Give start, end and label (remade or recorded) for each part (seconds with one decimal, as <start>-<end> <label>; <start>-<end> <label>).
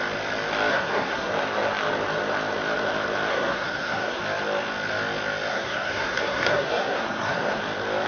0.0-0.7 recorded; 0.7-1.3 remade; 1.3-3.3 recorded; 3.3-4.2 remade; 4.2-5.5 recorded; 5.5-7.6 remade; 7.6-8.1 recorded